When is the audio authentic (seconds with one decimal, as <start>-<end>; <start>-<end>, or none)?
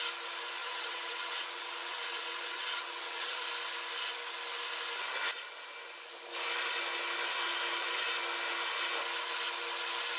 0.0-0.6; 3.4-10.2